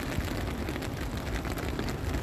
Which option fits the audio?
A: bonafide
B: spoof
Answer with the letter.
A